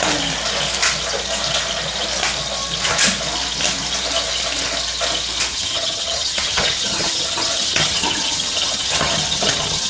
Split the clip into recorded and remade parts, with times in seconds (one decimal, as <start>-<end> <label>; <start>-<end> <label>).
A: 0.0-5.5 recorded; 5.5-9.9 remade